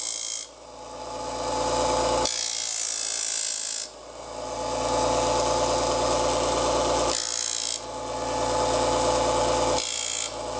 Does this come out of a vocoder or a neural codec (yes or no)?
no